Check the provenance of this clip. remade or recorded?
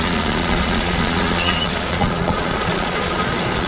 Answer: remade